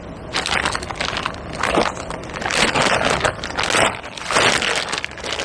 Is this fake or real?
real